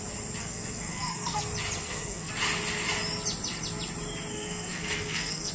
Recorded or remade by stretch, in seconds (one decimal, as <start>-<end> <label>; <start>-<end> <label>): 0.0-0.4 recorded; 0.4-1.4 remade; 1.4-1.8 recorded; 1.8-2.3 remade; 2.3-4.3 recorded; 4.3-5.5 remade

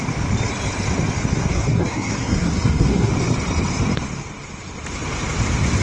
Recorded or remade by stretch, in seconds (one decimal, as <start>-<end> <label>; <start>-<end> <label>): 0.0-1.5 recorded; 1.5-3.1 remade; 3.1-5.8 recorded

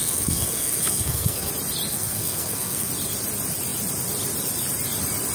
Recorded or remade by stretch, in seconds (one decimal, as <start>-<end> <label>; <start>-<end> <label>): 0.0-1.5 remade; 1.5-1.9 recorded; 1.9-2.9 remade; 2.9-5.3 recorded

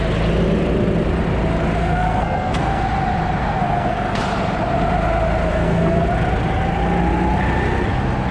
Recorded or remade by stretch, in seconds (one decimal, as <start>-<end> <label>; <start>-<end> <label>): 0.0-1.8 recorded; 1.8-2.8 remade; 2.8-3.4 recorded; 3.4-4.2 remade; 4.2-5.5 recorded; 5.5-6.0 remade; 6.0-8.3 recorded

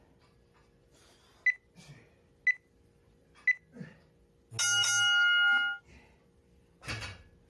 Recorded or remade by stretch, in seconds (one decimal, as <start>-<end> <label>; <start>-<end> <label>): 0.0-7.5 recorded

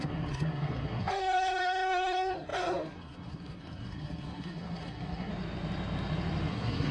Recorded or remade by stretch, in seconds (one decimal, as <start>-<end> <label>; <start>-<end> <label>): 0.0-5.3 remade; 5.3-6.5 recorded; 6.5-6.9 remade

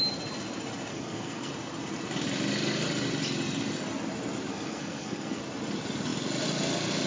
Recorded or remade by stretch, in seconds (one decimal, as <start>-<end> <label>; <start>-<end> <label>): 0.0-0.9 recorded; 0.9-1.5 remade; 1.5-4.5 recorded; 4.5-5.4 remade; 5.4-7.1 recorded